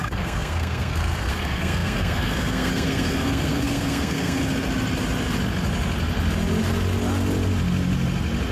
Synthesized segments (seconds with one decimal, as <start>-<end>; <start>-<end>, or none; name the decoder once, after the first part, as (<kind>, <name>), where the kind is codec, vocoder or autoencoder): 0.0-4.4 (codec, SNAC)